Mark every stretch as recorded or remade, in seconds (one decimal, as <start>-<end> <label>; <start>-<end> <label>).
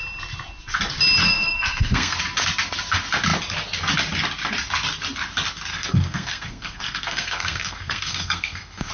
0.0-1.2 recorded; 1.2-2.2 remade; 2.2-5.7 recorded; 5.7-8.9 remade